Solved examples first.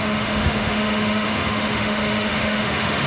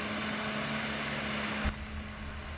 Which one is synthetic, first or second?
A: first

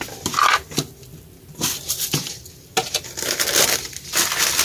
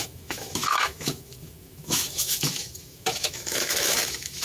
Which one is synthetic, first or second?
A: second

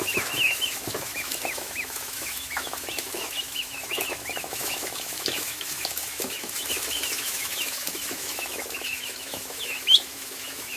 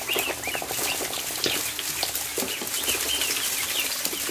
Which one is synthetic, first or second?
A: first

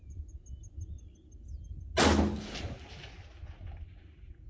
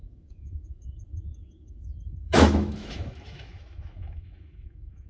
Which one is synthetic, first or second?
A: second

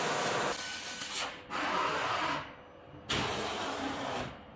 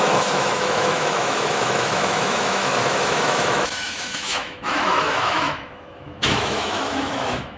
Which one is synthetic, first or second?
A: second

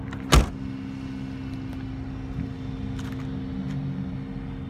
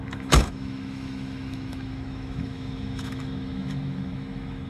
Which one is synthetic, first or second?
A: second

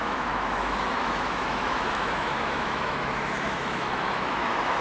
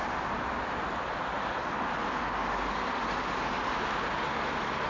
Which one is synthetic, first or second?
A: first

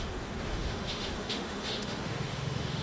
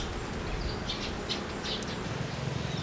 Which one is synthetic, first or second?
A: first